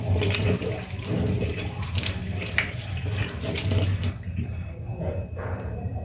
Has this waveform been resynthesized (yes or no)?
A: yes